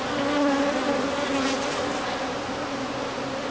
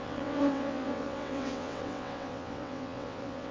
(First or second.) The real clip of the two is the first